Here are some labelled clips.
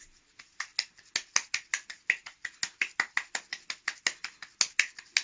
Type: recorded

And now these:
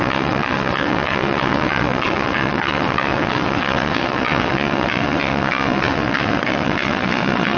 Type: remade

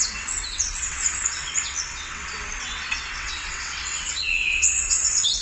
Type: remade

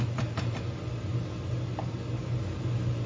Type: recorded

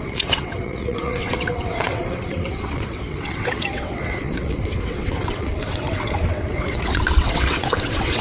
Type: remade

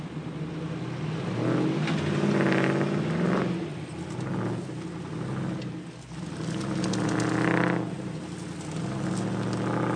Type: recorded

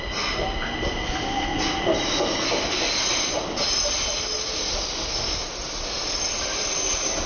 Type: recorded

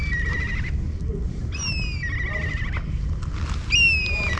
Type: recorded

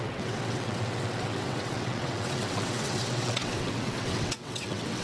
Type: remade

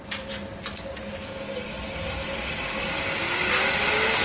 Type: recorded